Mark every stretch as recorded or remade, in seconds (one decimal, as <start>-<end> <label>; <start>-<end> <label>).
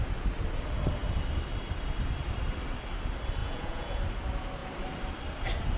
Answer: 0.0-3.4 recorded; 3.4-4.0 remade; 4.0-5.8 recorded